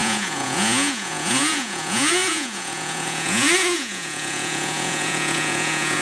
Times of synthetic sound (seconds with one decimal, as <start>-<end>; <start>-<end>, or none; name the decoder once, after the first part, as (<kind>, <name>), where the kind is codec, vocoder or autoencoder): 0.0-6.0 (vocoder, Vocos)